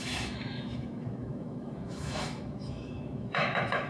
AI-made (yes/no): yes